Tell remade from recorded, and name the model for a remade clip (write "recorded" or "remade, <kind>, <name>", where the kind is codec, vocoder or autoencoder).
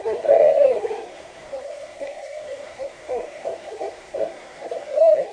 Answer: remade, codec, SNAC